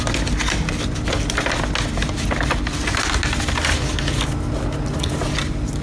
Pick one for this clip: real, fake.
real